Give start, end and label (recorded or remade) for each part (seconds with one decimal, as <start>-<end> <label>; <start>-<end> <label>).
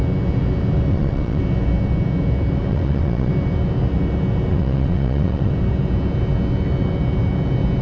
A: 0.0-0.9 recorded; 0.9-1.4 remade; 1.4-2.7 recorded; 2.7-3.3 remade; 3.3-4.5 recorded; 4.5-5.5 remade; 5.5-7.8 recorded